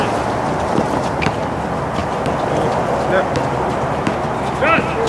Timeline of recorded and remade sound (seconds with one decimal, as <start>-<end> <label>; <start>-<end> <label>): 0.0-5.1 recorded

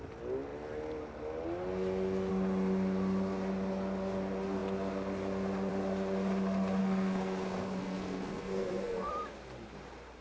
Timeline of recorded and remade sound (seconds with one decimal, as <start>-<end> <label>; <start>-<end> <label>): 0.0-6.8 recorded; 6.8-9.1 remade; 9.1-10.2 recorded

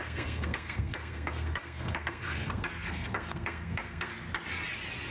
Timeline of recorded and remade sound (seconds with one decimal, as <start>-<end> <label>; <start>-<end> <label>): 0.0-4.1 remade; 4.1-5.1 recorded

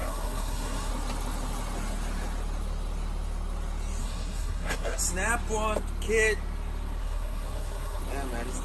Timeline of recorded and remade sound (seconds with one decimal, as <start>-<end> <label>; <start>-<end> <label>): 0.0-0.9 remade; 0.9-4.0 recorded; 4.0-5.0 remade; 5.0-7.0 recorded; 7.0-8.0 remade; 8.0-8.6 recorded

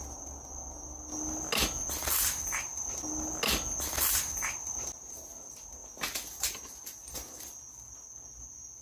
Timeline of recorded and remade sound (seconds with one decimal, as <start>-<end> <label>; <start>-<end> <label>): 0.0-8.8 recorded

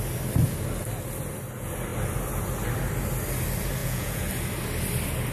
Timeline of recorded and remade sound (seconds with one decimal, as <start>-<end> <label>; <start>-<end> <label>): 0.0-3.8 recorded; 3.8-4.3 remade; 4.3-5.3 recorded

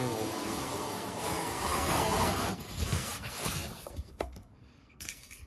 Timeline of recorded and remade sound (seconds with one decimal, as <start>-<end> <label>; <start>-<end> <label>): 0.0-5.5 remade